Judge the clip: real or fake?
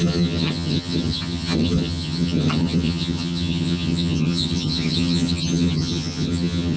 fake